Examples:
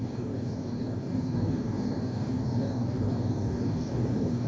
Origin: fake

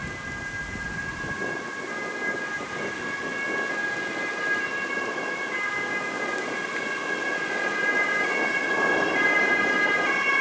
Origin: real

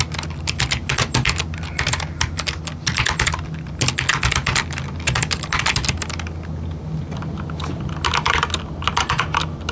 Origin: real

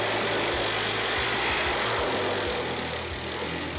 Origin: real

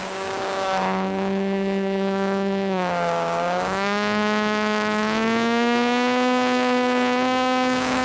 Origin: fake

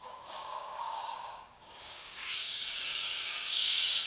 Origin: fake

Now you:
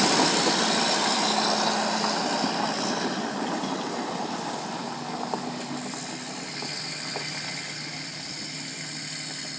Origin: real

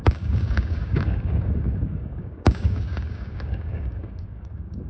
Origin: fake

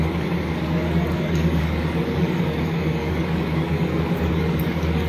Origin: fake